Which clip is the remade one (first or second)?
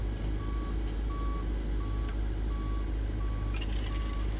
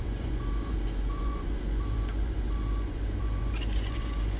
second